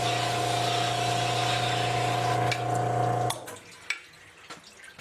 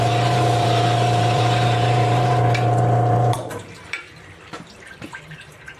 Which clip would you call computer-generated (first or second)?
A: second